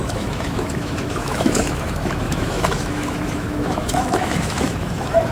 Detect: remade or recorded remade